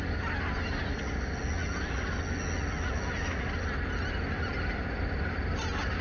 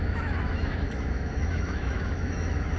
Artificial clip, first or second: second